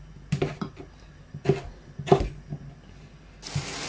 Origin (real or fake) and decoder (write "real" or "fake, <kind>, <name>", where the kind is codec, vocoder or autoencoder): real